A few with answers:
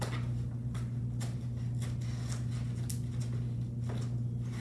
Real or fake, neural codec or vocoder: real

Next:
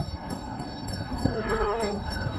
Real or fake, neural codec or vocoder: fake, codec, SNAC